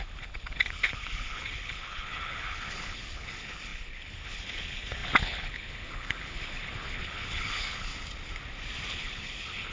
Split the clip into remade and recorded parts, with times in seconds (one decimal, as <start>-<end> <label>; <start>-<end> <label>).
0.0-7.9 remade; 7.9-8.9 recorded; 8.9-9.7 remade